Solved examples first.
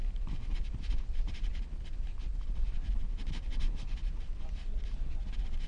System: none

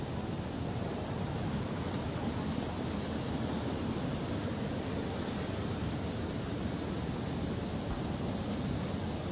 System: none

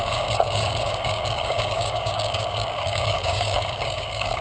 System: codec, DAC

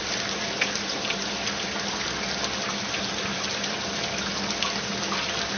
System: none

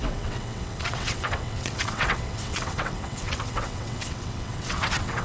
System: vocoder, WaveNeXt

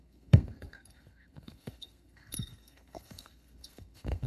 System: codec, SNAC